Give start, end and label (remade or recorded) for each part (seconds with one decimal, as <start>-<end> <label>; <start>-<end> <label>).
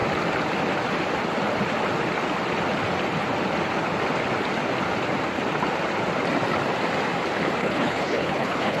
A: 0.0-7.6 recorded; 7.6-8.8 remade